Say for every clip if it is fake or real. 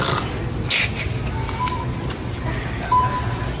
real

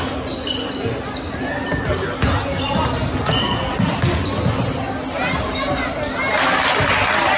real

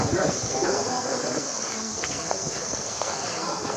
fake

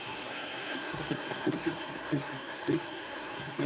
fake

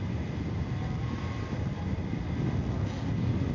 real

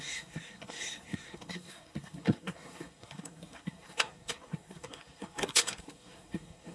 fake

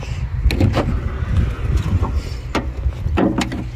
real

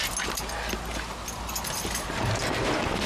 real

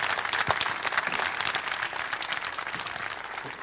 real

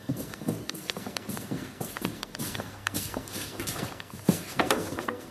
fake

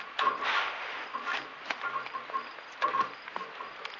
real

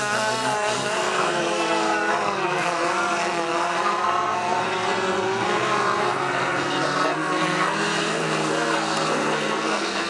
fake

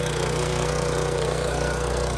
fake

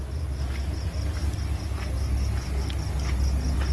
real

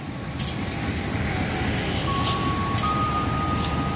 real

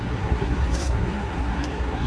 fake